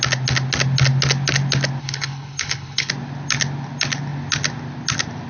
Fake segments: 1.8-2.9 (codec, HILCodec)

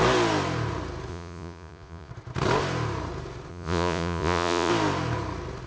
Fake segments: 1.1-2.1 (vocoder, Vocos); 3.5-4.7

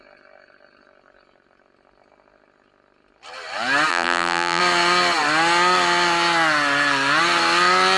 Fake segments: 3.9-4.6 (vocoder, BigVGAN v2)

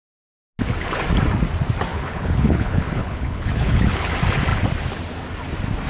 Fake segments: 1.9-4.1 (codec, HILCodec)

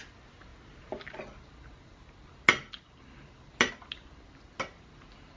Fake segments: none